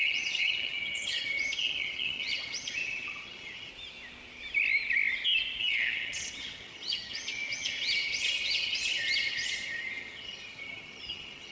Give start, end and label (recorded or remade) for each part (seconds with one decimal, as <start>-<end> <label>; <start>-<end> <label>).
0.0-3.7 remade; 3.7-5.6 recorded; 5.6-11.5 remade